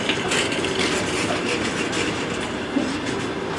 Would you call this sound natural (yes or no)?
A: yes